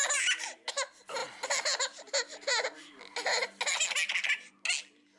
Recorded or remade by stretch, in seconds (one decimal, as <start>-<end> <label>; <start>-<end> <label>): 0.0-5.2 recorded